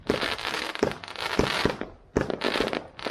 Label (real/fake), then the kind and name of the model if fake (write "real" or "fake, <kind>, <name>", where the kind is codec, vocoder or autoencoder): real